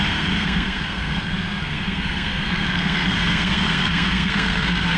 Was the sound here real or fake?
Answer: fake